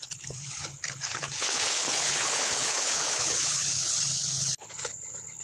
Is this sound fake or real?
fake